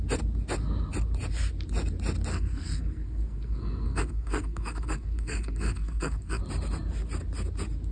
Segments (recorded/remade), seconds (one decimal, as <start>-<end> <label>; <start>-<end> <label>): 0.0-2.3 recorded; 2.3-6.4 remade; 6.4-7.9 recorded